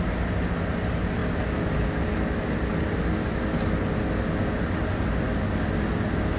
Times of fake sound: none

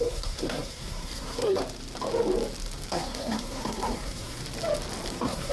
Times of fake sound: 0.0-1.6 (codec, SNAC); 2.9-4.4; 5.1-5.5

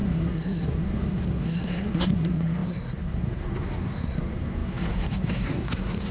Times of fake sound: 0.0-6.1 (codec, SNAC)